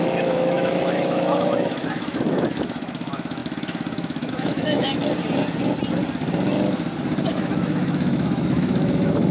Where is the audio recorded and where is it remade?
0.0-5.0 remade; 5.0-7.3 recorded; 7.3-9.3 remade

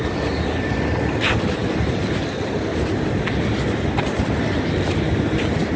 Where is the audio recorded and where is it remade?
0.0-5.8 recorded

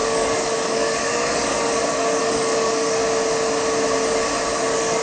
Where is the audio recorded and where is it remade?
0.0-3.0 remade; 3.0-4.5 recorded; 4.5-5.0 remade

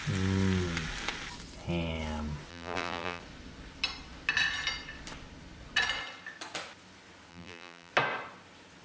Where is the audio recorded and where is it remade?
0.0-2.5 recorded; 2.5-3.2 remade; 3.2-7.3 recorded; 7.3-7.9 remade; 7.9-8.8 recorded